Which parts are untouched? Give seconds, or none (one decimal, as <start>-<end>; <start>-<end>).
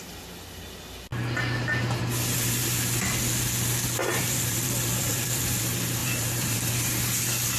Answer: 0.0-4.0; 5.6-6.0; 6.7-7.6